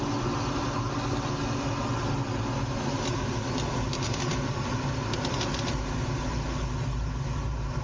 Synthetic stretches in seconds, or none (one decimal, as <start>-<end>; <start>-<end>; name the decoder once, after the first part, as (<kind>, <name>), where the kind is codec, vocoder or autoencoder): 3.9-4.9 (vocoder, BigVGAN v2)